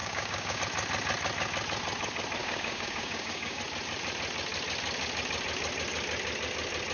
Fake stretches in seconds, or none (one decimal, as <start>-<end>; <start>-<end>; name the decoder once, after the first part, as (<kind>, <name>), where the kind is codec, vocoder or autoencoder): 0.0-0.6 (codec, DAC); 2.4-3.6